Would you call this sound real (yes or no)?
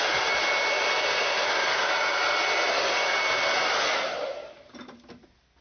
yes